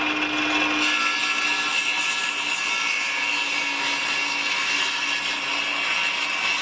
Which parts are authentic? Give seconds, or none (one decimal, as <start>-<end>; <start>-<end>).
0.0-6.6